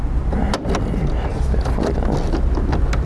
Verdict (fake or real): real